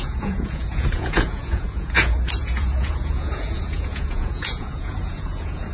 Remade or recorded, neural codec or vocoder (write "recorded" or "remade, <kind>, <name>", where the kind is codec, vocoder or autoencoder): remade, vocoder, Vocos